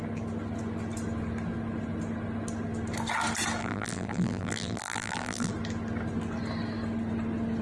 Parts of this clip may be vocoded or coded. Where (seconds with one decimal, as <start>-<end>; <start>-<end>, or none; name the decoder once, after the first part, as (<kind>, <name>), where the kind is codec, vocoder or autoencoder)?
3.6-5.5 (vocoder, BigVGAN v2)